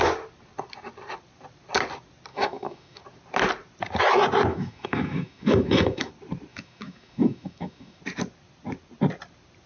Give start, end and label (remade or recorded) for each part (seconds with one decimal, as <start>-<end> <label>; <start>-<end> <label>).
0.0-2.3 recorded; 2.3-3.0 remade; 3.0-4.5 recorded; 4.5-6.1 remade; 6.1-6.5 recorded; 6.5-8.0 remade; 8.0-9.7 recorded